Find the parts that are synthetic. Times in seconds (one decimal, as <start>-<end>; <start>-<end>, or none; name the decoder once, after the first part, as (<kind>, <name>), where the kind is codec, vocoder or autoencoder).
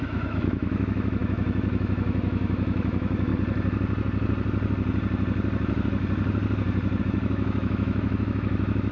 0.0-3.3 (autoencoder, DAC-VAE); 7.0-8.9